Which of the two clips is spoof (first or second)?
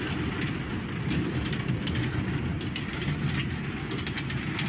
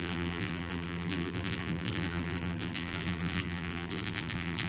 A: second